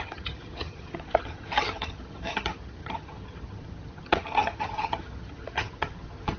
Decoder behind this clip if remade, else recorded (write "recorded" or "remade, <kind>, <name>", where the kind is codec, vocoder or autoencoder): remade, vocoder, HiFi-GAN